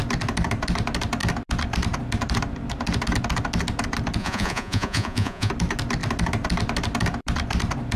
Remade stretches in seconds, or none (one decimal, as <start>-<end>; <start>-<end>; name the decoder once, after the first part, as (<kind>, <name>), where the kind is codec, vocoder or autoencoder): 4.2-5.5 (vocoder, Vocos)